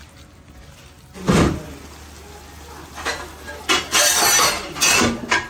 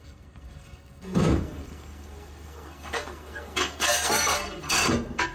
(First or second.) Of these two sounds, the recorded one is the first